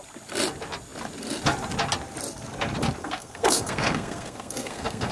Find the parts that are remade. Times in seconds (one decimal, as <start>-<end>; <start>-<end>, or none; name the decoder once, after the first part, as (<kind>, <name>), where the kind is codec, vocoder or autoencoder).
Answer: 3.0-5.1 (codec, SNAC)